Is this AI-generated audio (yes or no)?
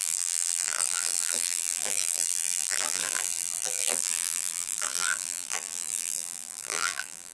yes